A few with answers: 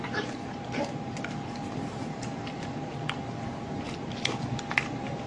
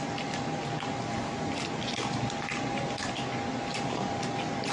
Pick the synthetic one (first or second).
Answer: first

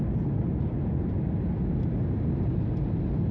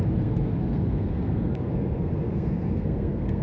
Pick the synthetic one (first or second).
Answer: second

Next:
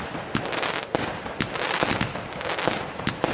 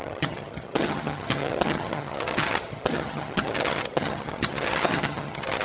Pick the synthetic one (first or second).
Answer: second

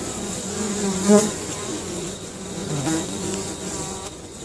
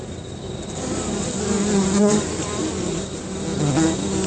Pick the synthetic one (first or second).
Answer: first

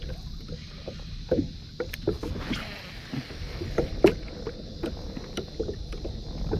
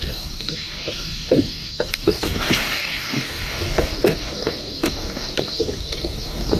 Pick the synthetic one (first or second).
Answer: second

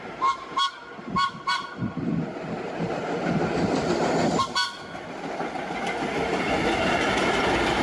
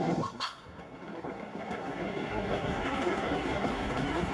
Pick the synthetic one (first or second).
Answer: second